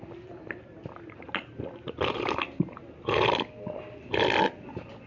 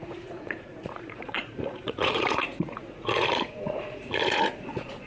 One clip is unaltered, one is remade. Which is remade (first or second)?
second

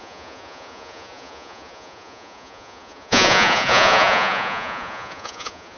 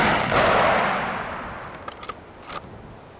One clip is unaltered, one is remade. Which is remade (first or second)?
first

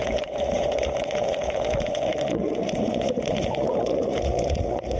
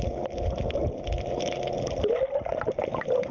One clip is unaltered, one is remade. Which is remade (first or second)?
first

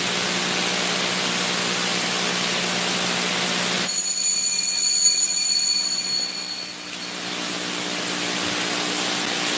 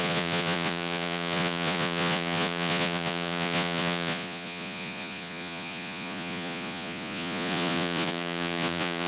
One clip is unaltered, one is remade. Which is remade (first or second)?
second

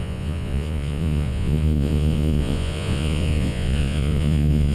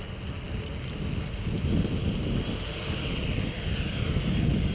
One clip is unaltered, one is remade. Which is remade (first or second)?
first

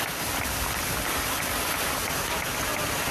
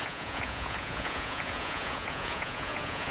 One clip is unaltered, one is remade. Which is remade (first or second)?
second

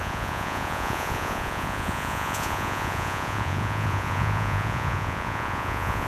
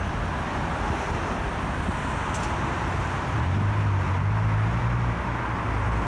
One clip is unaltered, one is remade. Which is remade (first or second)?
first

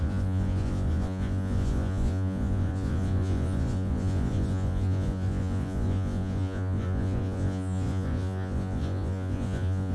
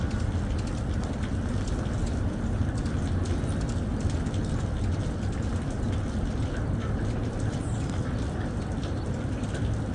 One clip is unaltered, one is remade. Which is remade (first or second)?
first